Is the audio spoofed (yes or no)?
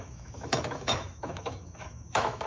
yes